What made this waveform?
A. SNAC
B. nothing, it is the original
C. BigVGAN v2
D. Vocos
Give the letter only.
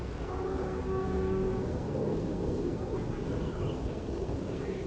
A